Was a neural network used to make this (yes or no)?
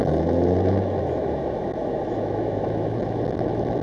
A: yes